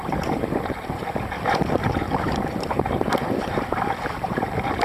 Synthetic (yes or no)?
yes